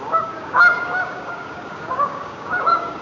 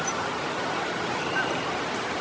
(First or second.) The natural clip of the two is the second